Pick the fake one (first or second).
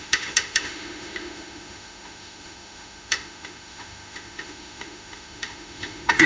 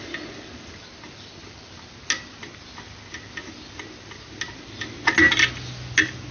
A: first